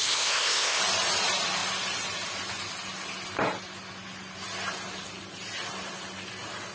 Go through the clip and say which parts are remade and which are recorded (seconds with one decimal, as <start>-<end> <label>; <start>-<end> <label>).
0.0-0.8 remade; 0.8-6.7 recorded